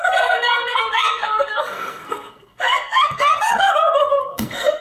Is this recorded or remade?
remade